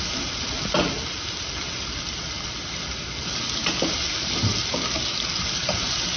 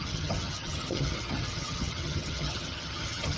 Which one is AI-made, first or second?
second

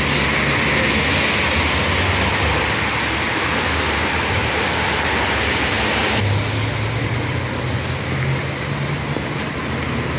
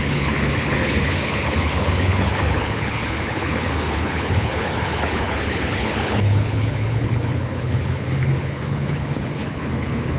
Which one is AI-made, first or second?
second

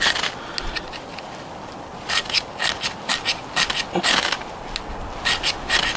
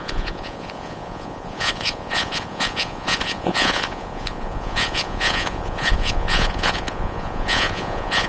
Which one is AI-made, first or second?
second